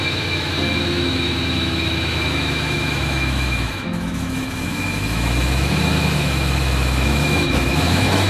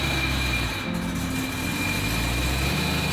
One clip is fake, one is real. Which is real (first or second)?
second